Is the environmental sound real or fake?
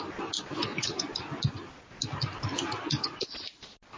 real